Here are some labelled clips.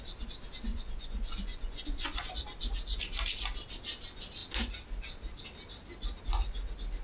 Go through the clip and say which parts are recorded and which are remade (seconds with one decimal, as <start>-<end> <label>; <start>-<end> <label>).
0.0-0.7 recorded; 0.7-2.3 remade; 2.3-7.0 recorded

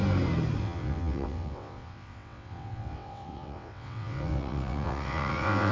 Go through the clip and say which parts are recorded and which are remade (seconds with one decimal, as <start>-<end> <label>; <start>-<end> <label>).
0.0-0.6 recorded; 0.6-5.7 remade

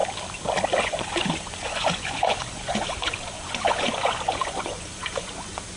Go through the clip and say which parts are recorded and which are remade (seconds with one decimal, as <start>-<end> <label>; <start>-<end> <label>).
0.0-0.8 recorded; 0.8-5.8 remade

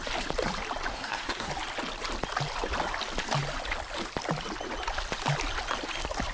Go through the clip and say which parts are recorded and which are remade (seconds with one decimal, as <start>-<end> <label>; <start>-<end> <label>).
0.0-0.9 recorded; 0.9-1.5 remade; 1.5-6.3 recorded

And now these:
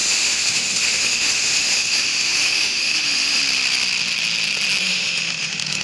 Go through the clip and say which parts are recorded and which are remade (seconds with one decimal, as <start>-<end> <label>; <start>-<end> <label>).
0.0-3.4 remade; 3.4-4.8 recorded; 4.8-5.8 remade

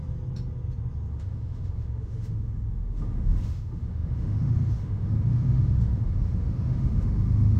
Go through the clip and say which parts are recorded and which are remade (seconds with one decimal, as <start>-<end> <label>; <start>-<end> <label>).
0.0-1.1 recorded; 1.1-7.6 remade

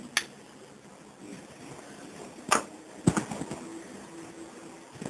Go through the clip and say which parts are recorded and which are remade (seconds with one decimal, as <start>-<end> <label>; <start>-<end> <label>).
0.0-1.3 recorded; 1.3-2.9 remade; 2.9-3.7 recorded; 3.7-4.3 remade; 4.3-5.1 recorded